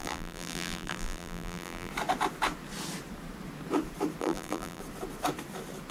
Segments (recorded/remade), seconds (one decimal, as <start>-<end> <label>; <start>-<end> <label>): 0.0-1.9 remade; 1.9-4.2 recorded; 4.2-4.8 remade; 4.8-5.9 recorded